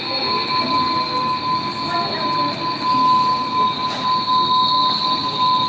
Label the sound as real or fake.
real